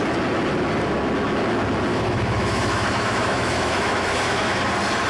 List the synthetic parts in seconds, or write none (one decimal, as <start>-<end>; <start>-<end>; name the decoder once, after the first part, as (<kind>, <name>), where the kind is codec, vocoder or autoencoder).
1.9-4.6 (autoencoder, DAC-VAE)